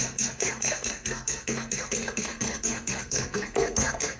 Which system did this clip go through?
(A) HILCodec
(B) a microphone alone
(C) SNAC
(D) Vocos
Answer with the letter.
C